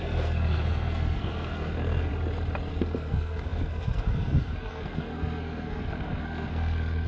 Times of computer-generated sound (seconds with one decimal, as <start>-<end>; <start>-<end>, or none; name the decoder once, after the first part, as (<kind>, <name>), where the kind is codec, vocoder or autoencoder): 0.0-2.1 (codec, SNAC); 2.7-7.1